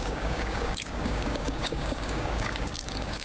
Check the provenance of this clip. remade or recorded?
remade